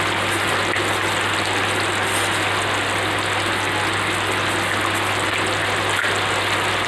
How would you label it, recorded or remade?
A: recorded